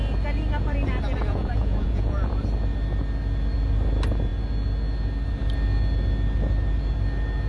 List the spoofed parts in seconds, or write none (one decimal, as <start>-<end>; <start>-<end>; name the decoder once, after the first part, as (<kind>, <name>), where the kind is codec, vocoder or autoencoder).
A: 1.2-2.3 (vocoder, Vocos)